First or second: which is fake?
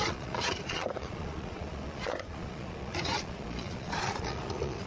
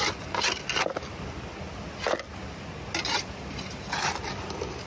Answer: first